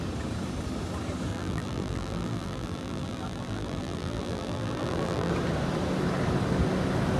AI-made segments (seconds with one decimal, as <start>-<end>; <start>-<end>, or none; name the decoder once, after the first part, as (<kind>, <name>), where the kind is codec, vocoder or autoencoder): 1.3-5.3 (vocoder, BigVGAN v2)